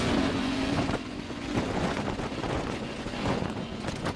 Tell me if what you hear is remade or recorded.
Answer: remade